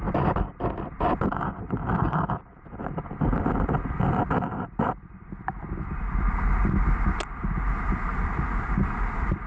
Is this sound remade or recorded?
recorded